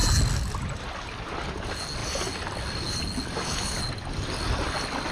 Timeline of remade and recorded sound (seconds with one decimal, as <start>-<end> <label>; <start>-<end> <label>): 0.0-5.1 recorded